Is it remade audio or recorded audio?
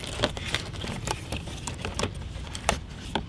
remade